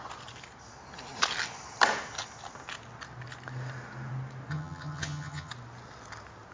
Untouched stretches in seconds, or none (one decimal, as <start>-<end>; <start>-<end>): 0.0-4.5; 5.5-6.5